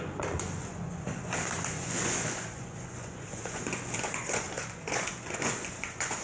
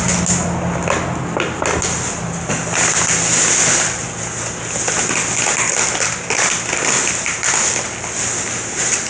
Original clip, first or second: second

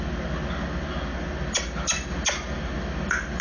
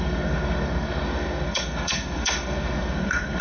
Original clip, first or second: first